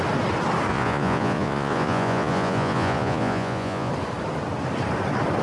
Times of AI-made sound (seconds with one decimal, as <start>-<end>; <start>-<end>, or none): 0.7-3.9